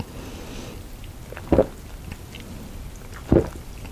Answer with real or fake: real